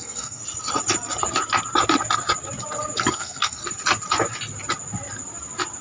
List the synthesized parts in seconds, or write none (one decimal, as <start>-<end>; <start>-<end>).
0.0-0.4; 3.1-3.6